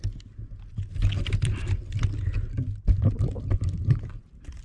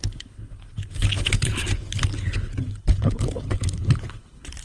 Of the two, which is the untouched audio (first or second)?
first